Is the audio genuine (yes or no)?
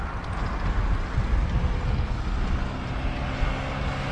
yes